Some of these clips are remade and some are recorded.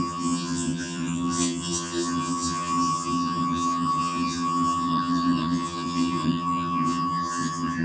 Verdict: remade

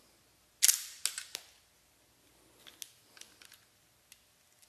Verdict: recorded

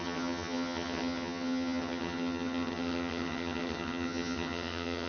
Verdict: remade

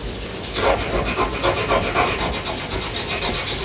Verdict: recorded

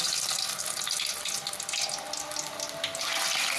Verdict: remade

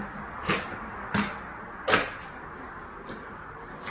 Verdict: recorded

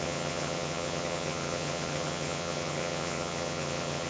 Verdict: remade